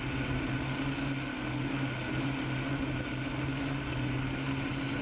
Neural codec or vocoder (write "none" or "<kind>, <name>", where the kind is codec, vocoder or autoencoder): none